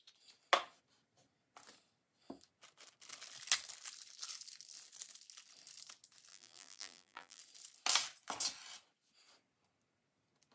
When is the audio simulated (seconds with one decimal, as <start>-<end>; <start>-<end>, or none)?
6.3-7.4